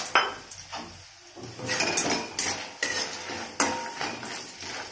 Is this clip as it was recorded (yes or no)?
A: yes